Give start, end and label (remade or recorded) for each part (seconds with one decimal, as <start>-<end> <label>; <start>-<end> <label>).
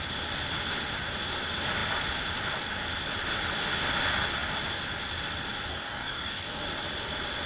0.0-5.7 recorded; 5.7-6.6 remade; 6.6-7.5 recorded